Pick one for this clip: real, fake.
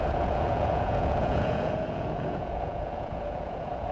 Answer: fake